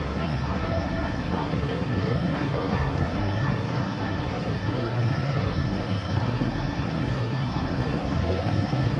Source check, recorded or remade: remade